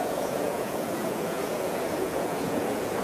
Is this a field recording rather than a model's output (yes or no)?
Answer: no